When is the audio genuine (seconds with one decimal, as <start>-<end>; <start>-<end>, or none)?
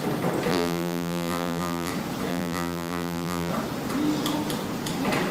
0.0-0.5; 1.9-2.3; 3.5-5.3